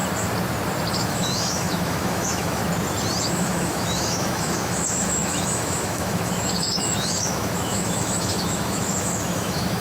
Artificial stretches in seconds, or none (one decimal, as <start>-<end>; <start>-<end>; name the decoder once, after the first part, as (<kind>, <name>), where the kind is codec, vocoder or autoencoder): 1.0-2.6 (autoencoder, DAC-VAE); 3.2-9.8